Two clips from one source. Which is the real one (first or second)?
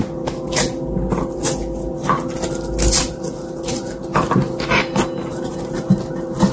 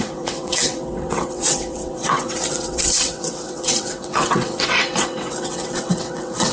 first